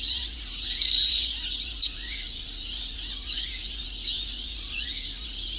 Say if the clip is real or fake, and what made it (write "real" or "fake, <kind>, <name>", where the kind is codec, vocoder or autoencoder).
fake, vocoder, Vocos